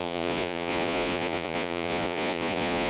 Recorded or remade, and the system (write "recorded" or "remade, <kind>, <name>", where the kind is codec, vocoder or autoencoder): remade, vocoder, Vocos